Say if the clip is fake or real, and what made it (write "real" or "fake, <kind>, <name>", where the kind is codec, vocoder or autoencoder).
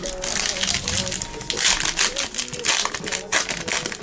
real